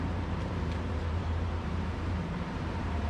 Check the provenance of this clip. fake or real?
fake